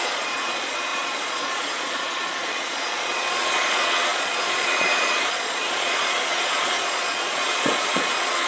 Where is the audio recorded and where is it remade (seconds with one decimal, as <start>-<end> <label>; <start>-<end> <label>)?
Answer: 0.0-8.5 remade